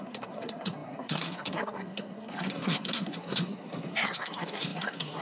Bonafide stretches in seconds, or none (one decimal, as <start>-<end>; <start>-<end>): none